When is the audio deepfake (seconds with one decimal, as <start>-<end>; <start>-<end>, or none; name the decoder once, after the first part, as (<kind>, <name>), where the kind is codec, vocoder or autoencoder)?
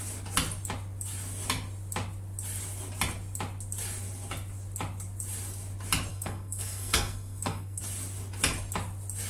6.1-7.8 (codec, SNAC)